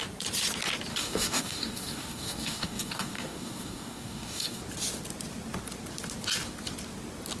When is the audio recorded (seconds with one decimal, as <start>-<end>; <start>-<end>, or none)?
0.0-0.9; 4.6-7.4